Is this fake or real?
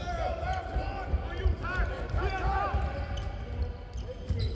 real